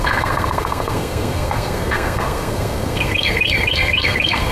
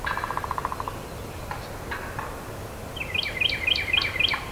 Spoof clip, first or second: first